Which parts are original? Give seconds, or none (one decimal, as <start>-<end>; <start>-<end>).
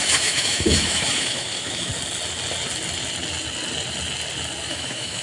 1.9-4.7